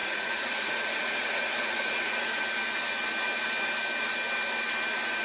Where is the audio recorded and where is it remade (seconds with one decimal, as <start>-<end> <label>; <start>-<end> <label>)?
0.0-2.4 remade; 2.4-5.2 recorded